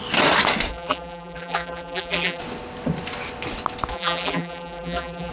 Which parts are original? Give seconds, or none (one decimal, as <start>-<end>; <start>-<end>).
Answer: 0.0-0.7; 2.4-3.9